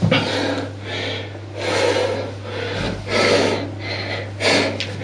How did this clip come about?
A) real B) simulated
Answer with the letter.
A